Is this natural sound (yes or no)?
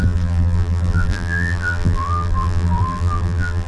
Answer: no